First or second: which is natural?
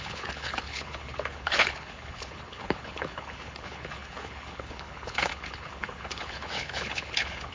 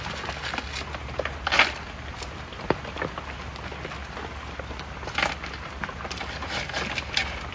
second